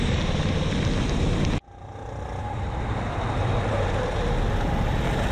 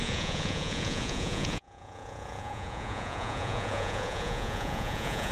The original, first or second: first